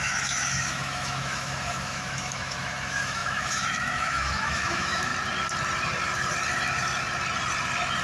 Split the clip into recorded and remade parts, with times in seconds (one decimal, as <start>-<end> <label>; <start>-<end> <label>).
0.0-5.1 remade; 5.1-8.0 recorded